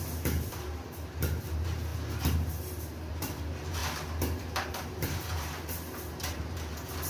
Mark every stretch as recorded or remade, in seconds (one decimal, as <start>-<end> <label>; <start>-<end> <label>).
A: 0.0-1.9 remade; 1.9-3.1 recorded; 3.1-3.8 remade; 3.8-4.9 recorded; 4.9-7.1 remade